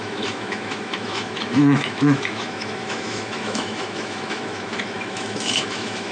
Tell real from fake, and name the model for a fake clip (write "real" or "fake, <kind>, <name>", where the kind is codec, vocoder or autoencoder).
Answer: fake, autoencoder, DAC-VAE